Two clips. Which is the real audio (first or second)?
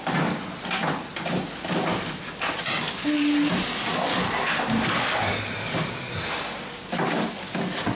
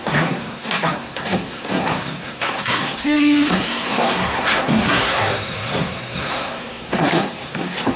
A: first